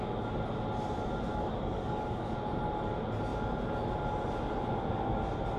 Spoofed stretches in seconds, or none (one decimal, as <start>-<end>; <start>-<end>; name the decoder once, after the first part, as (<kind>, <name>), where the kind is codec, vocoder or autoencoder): 1.3-2.3 (codec, DAC)